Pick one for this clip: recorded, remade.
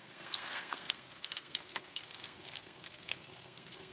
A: remade